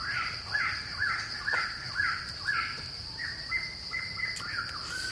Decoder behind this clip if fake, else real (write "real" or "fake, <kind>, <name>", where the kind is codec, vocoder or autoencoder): fake, vocoder, BigVGAN v2